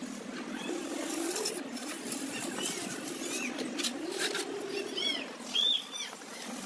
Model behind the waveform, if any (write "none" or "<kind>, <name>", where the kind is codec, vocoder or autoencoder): none